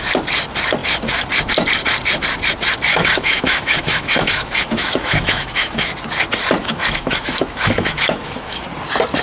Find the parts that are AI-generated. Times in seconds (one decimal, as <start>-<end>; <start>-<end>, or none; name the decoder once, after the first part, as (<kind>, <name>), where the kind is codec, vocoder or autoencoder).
2.9-5.9 (autoencoder, DAC-VAE); 6.6-8.6